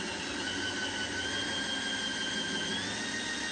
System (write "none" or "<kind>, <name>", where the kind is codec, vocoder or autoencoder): none